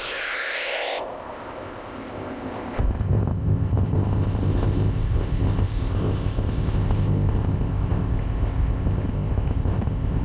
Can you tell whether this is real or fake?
fake